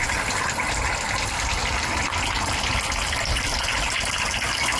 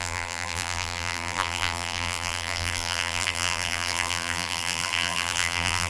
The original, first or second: first